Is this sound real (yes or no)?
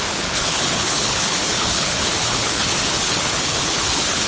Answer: no